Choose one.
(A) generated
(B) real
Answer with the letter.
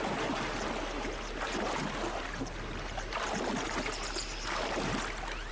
B